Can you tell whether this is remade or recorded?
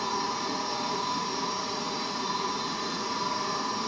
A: remade